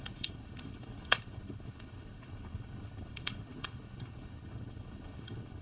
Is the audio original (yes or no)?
no